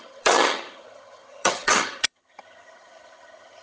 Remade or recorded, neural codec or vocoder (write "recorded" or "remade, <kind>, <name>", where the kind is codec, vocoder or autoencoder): remade, vocoder, HiFi-GAN